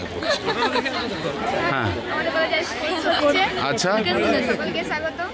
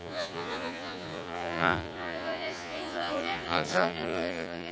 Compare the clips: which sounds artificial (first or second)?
second